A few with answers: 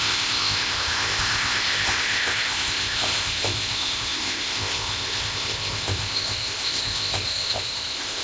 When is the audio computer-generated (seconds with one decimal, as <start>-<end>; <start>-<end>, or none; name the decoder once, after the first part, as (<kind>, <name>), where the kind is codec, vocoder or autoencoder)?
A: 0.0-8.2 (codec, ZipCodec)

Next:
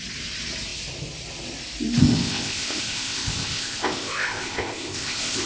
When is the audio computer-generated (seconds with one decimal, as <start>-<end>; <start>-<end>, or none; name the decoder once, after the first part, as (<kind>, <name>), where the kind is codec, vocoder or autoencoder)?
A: 2.0-5.5 (codec, ZipCodec)

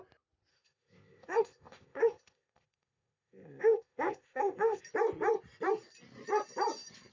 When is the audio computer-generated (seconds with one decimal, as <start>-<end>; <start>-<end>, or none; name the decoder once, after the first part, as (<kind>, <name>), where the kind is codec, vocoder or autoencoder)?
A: 0.5-4.8 (codec, ZipCodec)